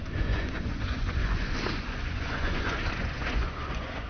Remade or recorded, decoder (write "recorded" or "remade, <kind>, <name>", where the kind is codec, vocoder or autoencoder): remade, vocoder, Vocos